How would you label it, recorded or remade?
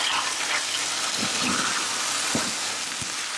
recorded